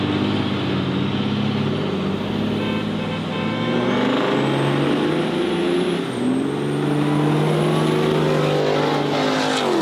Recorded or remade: recorded